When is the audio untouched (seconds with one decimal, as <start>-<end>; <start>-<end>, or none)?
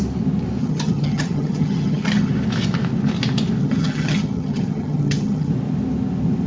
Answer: 0.0-0.6; 2.3-3.6; 5.5-6.5